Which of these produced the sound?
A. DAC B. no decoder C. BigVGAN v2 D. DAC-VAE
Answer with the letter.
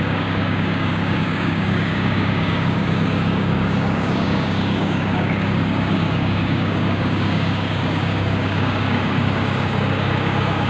A